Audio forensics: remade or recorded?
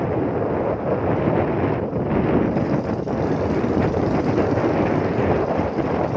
recorded